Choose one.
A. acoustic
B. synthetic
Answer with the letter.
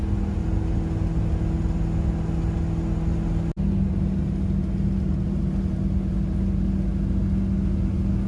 A